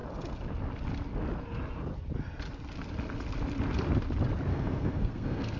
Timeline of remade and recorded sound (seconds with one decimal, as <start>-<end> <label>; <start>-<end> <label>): 0.0-4.5 recorded; 4.5-5.6 remade